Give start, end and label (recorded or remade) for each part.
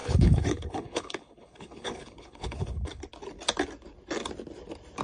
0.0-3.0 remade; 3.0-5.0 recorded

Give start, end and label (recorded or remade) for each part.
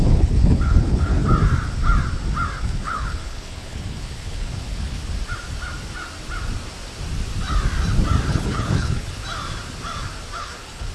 0.0-1.2 remade; 1.2-2.6 recorded; 2.6-5.0 remade; 5.0-8.3 recorded; 8.3-9.2 remade; 9.2-10.4 recorded; 10.4-10.9 remade